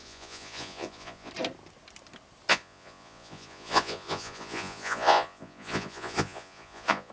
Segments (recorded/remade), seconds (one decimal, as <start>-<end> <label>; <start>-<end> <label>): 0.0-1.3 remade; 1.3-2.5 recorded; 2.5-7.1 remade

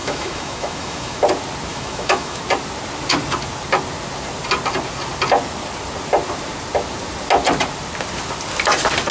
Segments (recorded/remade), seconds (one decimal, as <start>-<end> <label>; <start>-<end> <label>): 0.0-1.2 remade; 1.2-1.7 recorded; 1.7-2.4 remade; 2.4-9.1 recorded

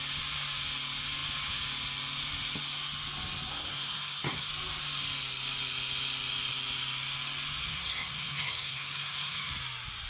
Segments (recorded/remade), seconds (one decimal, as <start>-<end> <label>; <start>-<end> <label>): 0.0-3.5 recorded; 3.5-4.5 remade; 4.5-7.6 recorded; 7.6-9.5 remade; 9.5-10.1 recorded

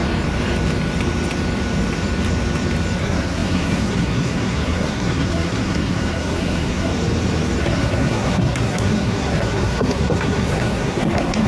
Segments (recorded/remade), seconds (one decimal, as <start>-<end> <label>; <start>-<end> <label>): 0.0-3.0 recorded; 3.0-6.9 remade; 6.9-7.6 recorded; 7.6-11.5 remade

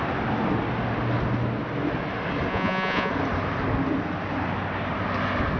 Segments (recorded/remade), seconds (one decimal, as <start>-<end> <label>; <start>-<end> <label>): 0.0-2.5 recorded; 2.5-3.1 remade; 3.1-5.6 recorded